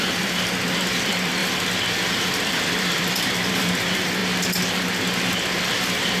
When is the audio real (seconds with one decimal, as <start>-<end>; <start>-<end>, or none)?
1.4-1.9; 4.2-6.2